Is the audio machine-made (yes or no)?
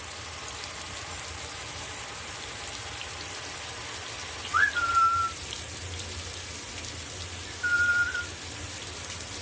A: no